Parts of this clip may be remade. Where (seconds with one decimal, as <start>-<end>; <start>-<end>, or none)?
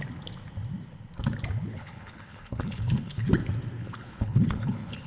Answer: 1.7-3.3; 3.8-5.1